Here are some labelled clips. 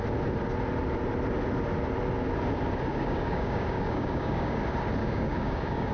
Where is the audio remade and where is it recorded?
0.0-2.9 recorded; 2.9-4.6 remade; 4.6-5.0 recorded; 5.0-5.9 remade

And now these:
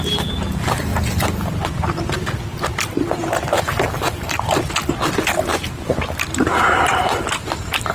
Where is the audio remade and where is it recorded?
0.0-0.9 recorded; 0.9-2.8 remade; 2.8-7.9 recorded

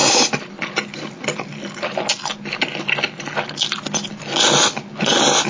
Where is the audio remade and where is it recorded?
0.0-5.5 recorded

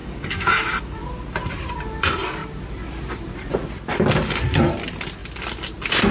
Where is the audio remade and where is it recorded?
0.0-1.0 remade; 1.0-6.1 recorded